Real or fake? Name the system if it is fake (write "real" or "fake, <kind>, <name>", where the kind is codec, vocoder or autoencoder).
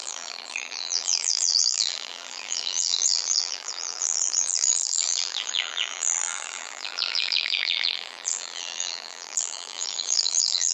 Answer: fake, vocoder, BigVGAN v2